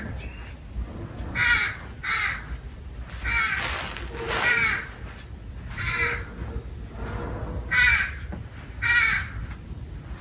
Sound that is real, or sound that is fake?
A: real